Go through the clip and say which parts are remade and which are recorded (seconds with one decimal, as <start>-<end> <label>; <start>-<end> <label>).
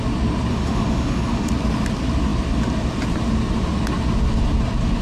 0.0-0.5 recorded; 0.5-1.5 remade; 1.5-5.0 recorded